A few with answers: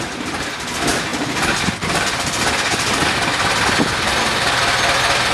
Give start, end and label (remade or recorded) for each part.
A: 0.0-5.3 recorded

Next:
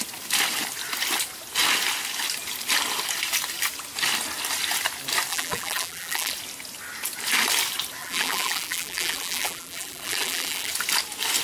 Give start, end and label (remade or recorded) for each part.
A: 0.0-5.3 recorded; 5.3-6.3 remade; 6.3-8.0 recorded; 8.0-10.7 remade; 10.7-11.4 recorded